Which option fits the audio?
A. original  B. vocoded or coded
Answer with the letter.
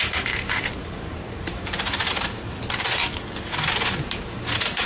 B